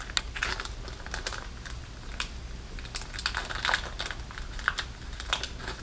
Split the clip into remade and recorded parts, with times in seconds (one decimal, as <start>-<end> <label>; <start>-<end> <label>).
0.0-5.8 recorded